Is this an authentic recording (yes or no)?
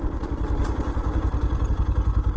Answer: yes